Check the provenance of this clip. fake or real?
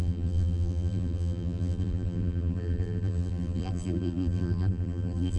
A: fake